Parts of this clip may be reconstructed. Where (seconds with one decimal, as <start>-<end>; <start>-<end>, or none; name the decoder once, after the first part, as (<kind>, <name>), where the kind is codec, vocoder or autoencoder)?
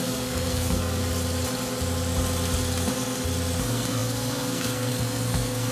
0.0-1.0 (codec, SNAC); 3.6-5.7